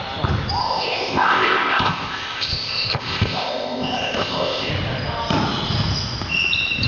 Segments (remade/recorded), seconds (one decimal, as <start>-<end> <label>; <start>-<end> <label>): 0.0-0.6 recorded; 0.6-4.7 remade; 4.7-6.9 recorded